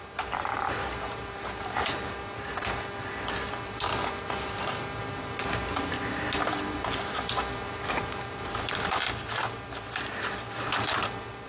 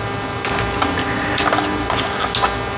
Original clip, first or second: second